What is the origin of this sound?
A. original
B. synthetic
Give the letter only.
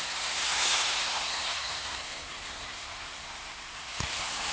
B